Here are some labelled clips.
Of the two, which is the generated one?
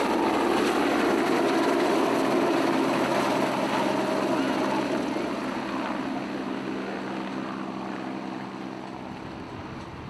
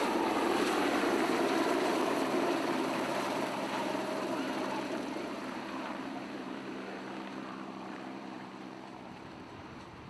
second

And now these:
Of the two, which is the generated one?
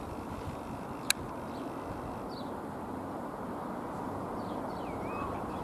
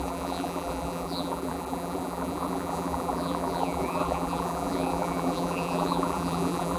second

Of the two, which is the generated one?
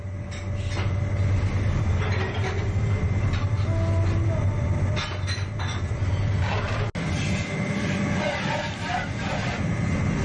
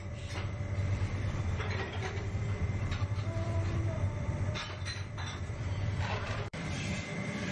second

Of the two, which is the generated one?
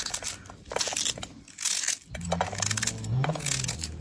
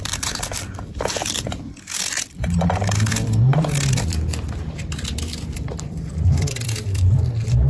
second